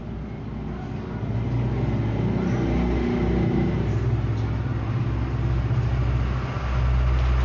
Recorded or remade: recorded